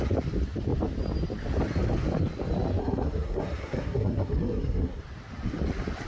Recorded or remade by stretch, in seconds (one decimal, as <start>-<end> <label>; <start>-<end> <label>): 0.0-2.8 recorded; 2.8-5.0 remade; 5.0-6.1 recorded